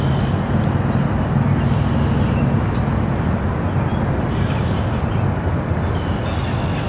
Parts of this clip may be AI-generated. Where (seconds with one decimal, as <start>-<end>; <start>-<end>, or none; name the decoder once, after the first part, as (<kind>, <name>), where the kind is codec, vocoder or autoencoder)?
none